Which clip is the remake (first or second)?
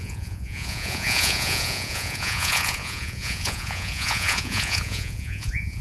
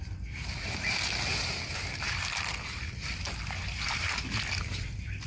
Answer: first